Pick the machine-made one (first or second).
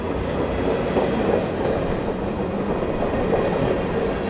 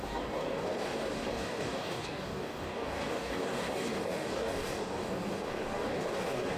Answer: second